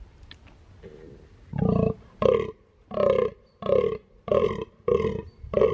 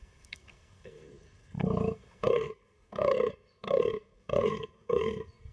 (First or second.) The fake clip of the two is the second